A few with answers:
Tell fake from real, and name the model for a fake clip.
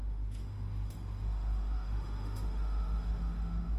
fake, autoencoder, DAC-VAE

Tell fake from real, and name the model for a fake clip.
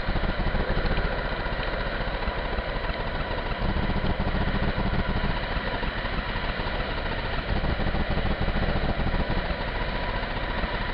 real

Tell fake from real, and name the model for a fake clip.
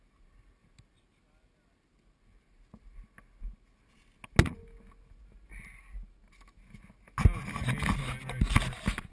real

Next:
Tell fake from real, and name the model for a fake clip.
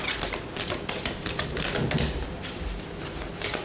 real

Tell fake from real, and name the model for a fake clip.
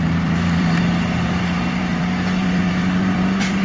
fake, vocoder, BigVGAN v2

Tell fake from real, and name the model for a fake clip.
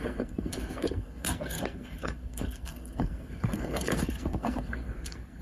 fake, codec, SNAC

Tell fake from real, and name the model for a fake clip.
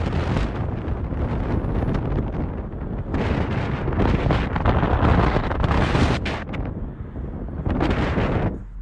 real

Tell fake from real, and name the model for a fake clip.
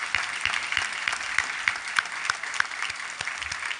real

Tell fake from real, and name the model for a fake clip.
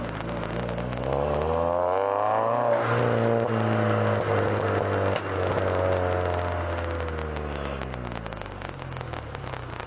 real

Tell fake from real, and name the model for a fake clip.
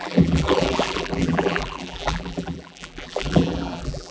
fake, vocoder, BigVGAN v2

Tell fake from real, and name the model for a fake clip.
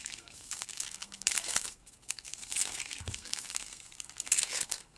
fake, codec, SNAC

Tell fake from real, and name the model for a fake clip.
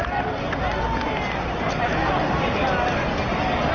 real